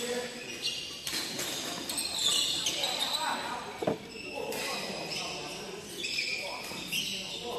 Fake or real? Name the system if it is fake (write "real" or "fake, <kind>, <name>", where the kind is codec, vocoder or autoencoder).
real